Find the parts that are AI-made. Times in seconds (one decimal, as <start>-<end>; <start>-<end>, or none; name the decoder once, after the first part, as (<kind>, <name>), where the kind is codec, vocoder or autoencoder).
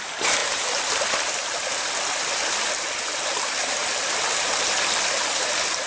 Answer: none